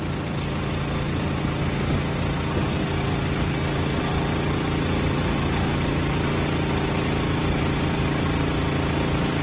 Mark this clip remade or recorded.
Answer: recorded